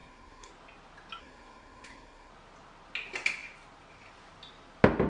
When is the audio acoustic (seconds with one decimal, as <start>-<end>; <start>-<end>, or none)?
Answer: 0.5-1.2; 2.3-5.1